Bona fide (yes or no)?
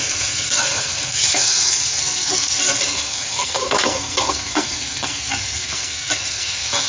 no